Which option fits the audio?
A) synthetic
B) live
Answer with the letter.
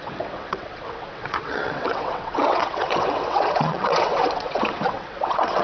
A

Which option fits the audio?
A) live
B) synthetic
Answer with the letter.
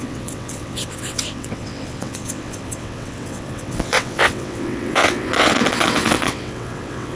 B